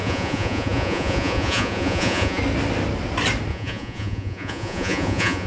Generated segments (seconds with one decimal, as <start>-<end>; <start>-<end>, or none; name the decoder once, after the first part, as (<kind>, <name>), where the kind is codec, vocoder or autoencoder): 0.0-2.4 (vocoder, Vocos); 3.5-5.5